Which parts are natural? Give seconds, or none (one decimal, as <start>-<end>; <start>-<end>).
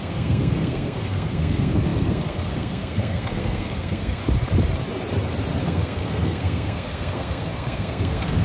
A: 4.2-5.6